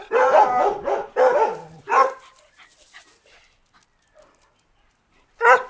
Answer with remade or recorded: recorded